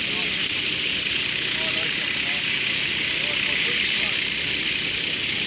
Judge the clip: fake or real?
real